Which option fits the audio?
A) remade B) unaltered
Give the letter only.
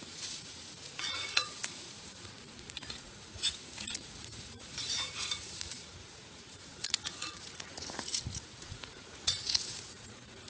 A